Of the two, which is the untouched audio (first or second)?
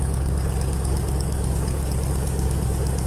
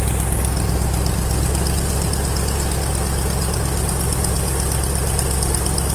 second